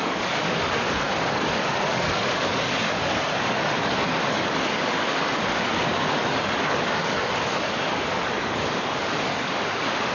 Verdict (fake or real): fake